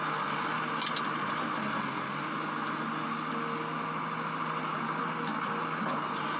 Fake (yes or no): no